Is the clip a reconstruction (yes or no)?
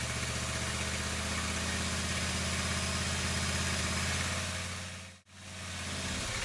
no